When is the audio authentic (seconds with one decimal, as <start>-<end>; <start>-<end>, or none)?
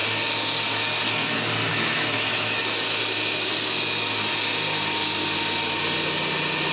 0.0-1.7; 2.6-6.7